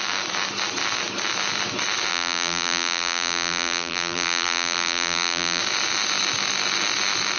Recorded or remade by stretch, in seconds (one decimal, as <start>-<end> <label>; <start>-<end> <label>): 0.0-2.1 recorded; 2.1-5.6 remade; 5.6-7.4 recorded